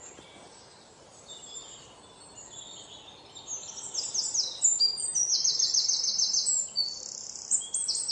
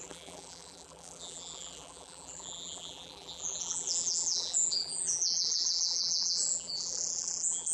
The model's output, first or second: second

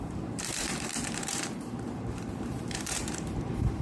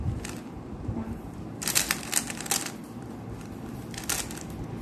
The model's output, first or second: first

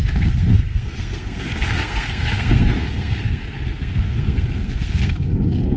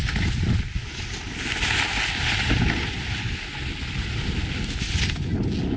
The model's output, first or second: first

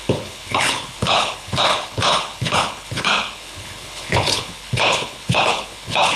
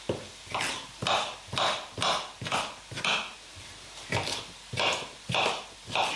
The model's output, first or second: first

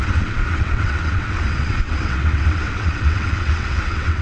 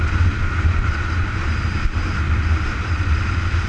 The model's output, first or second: first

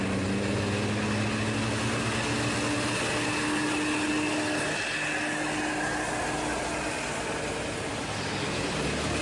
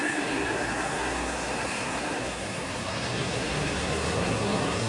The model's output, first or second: second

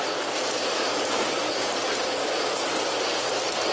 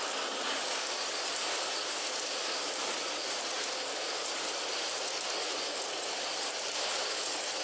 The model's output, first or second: second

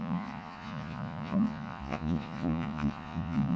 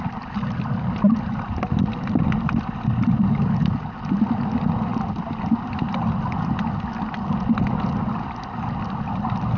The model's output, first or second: first